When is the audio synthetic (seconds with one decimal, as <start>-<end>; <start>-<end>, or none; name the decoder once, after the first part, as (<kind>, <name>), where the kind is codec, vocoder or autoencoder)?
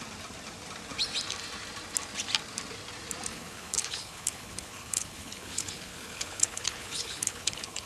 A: 3.3-7.9 (codec, HILCodec)